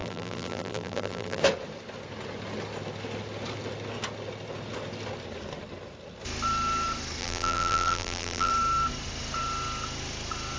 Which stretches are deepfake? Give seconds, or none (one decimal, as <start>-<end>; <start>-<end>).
0.0-1.4; 7.2-8.5